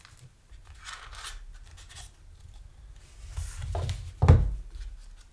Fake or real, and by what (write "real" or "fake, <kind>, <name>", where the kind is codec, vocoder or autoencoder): real